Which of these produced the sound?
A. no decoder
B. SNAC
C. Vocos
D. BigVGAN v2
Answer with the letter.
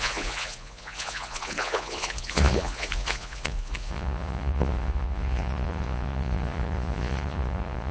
C